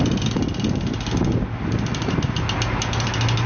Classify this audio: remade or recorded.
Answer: recorded